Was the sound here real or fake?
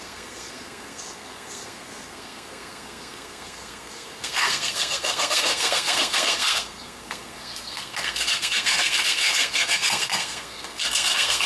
fake